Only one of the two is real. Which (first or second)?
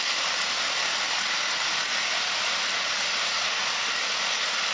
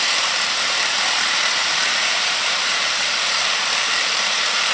first